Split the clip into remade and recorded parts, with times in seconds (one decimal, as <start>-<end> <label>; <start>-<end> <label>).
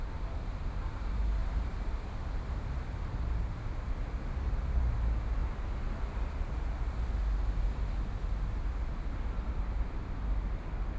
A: 0.0-1.4 recorded; 1.4-3.3 remade; 3.3-5.4 recorded; 5.4-6.0 remade; 6.0-11.0 recorded